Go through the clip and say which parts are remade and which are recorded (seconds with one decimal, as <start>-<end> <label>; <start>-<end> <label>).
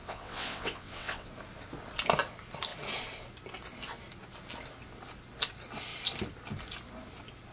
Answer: 0.0-1.3 remade; 1.3-7.5 recorded